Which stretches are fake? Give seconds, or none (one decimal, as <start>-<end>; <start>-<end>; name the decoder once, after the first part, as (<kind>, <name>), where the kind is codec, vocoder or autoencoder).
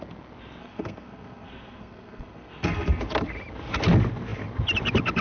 0.6-3.0 (codec, SNAC)